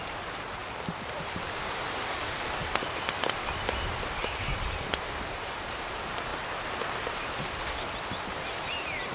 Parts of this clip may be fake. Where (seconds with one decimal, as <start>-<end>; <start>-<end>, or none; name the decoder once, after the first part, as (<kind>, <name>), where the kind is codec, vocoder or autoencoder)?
0.0-2.6 (vocoder, BigVGAN v2); 4.4-6.3; 8.2-9.1